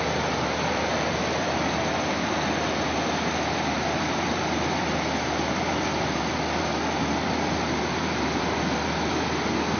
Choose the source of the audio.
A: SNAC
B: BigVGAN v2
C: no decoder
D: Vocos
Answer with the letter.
B